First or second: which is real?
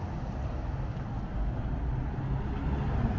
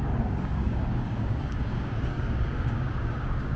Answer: first